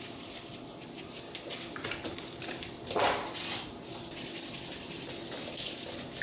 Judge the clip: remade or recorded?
recorded